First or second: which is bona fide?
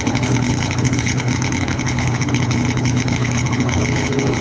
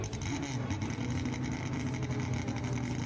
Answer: second